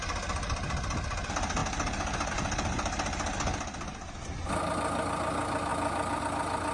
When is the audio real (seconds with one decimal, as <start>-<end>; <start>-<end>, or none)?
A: 0.0-6.7